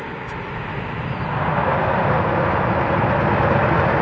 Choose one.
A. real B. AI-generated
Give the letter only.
A